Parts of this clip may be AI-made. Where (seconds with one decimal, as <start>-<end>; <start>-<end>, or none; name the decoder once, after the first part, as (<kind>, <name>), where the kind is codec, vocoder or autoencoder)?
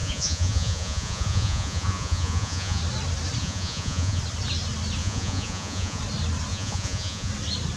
0.0-2.8 (vocoder, Vocos); 3.4-4.2; 5.0-6.0; 6.5-7.3